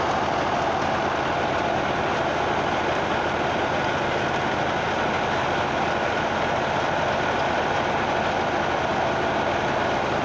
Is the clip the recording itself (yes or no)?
yes